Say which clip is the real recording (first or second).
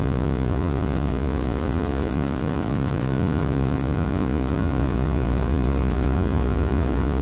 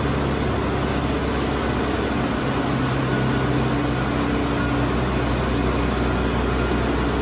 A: second